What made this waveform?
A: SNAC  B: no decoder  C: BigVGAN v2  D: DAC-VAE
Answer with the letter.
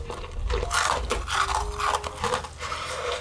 B